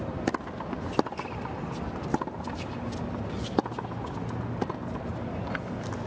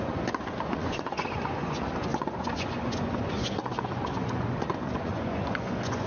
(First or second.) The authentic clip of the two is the first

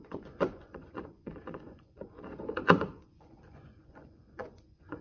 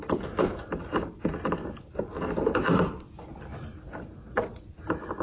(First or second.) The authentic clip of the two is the second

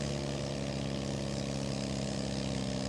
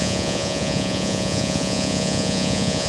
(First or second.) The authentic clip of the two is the first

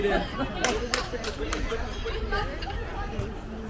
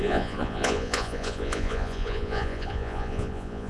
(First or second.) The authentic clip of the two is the first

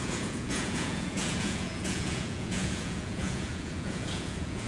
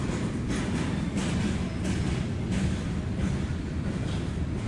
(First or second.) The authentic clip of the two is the second